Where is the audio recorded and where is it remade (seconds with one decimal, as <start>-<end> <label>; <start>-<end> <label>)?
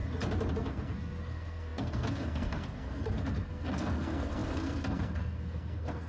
0.0-0.5 recorded; 0.5-6.1 remade